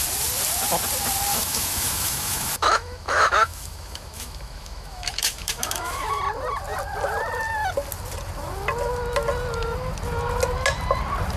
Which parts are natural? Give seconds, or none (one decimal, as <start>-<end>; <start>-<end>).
0.0-1.3; 6.2-11.4